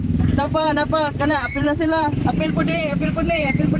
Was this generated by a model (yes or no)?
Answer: yes